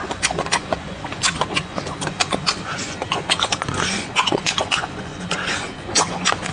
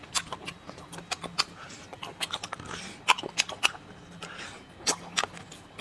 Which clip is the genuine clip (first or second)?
second